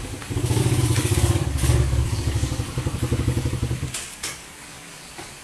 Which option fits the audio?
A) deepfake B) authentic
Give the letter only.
A